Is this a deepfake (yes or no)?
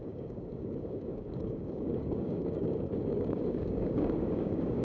yes